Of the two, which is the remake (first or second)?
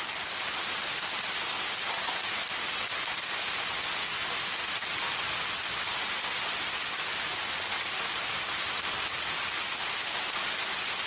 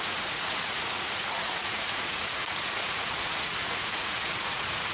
second